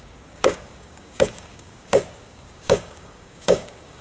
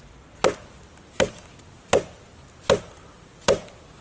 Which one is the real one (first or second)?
second